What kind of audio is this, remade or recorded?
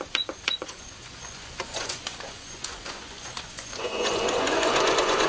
remade